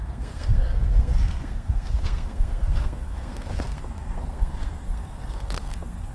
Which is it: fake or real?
fake